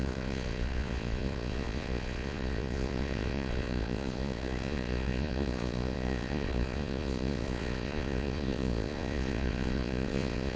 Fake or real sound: fake